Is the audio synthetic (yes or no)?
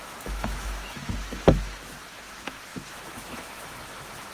yes